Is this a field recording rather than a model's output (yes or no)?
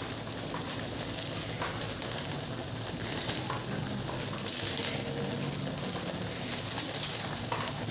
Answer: yes